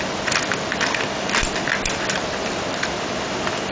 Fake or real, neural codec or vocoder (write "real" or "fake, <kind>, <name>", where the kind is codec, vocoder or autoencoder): real